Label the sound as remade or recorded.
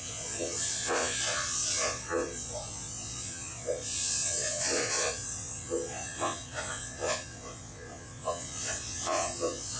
remade